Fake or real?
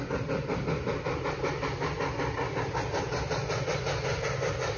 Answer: real